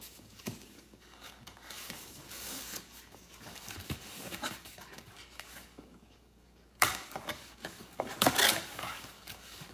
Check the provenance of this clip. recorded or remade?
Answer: remade